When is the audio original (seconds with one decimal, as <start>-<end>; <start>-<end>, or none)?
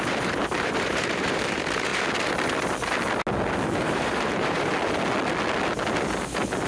1.9-3.8; 4.7-6.7